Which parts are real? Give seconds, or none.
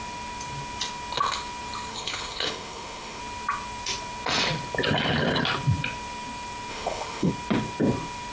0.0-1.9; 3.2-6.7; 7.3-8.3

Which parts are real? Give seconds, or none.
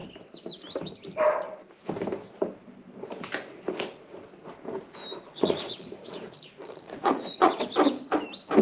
0.0-5.3; 7.5-8.6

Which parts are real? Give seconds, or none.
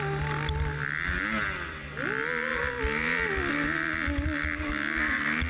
0.0-5.5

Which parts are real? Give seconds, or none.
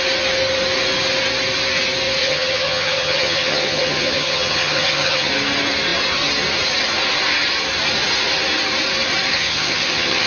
0.0-2.2; 5.3-9.3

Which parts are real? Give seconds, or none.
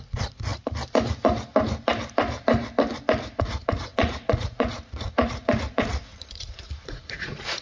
0.5-3.4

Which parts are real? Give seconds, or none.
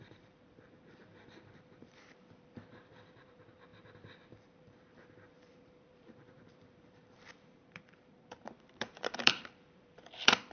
none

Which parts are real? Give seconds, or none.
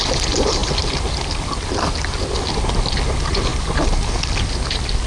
0.0-5.1